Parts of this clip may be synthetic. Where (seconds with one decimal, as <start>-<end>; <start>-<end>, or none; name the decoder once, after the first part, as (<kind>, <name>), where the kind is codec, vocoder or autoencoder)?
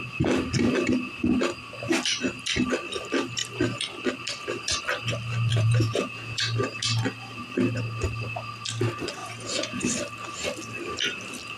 5.5-6.4 (vocoder, Vocos); 9.2-9.8